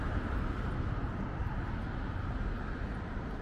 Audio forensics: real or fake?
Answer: real